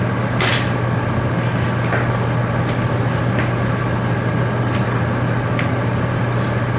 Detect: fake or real real